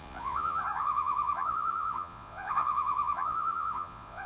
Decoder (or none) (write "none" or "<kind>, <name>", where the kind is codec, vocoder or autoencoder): vocoder, Vocos